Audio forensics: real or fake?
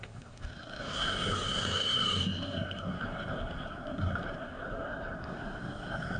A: fake